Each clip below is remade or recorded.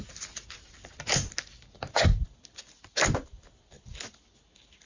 recorded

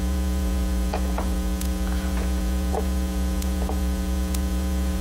remade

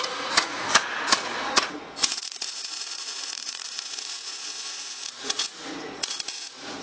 remade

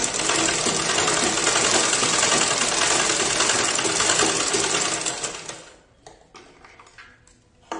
recorded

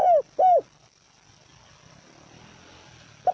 recorded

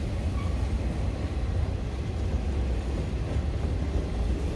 recorded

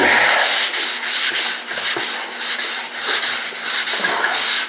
recorded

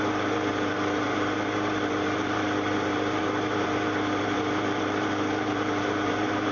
remade